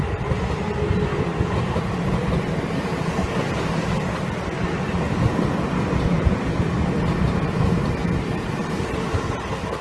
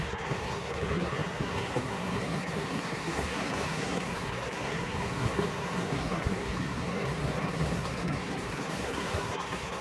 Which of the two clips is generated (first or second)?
second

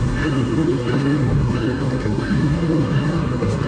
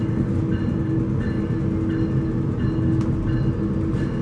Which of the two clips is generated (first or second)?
first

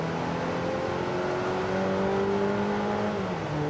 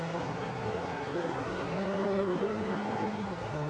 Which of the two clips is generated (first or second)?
second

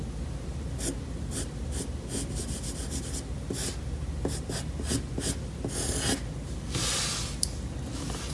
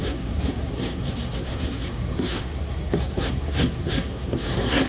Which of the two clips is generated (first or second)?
second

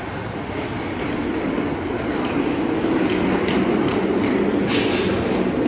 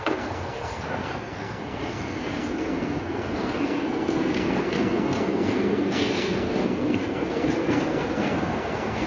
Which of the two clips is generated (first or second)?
second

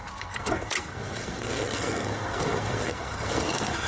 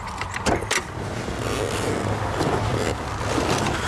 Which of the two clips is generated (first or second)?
first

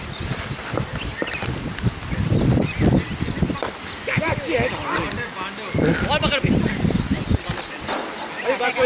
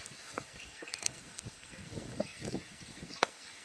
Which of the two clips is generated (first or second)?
second